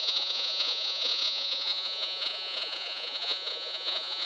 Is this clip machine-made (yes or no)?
yes